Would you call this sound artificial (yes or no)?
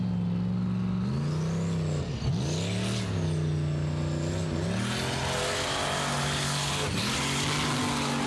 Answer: no